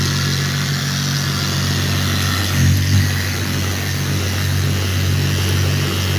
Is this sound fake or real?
real